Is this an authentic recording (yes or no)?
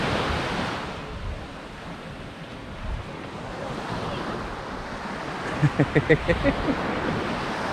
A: yes